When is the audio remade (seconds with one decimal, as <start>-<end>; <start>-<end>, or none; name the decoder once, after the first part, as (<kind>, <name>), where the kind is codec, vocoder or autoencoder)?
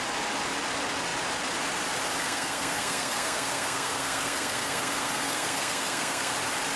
2.2-6.3 (codec, SNAC)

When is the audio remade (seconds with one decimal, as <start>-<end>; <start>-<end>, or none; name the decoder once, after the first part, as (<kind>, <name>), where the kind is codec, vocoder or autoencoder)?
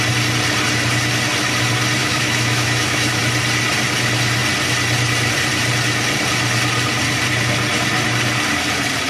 2.0-3.2 (autoencoder, DAC-VAE)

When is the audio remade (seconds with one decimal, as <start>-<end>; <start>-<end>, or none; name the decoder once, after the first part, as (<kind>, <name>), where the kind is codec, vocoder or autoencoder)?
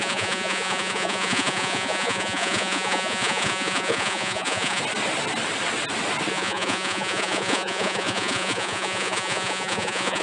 0.0-4.8 (vocoder, Vocos); 6.3-10.2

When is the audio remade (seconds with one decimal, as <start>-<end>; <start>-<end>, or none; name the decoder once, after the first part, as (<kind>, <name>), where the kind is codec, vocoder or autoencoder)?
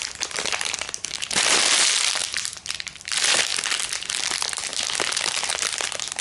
0.0-3.5 (vocoder, BigVGAN v2); 4.1-4.7; 5.5-6.2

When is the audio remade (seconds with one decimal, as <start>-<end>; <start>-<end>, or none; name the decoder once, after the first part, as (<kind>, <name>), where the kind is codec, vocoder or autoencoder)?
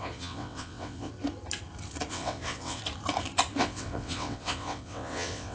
0.0-1.1 (vocoder, WaveNeXt); 2.1-2.8; 3.6-5.5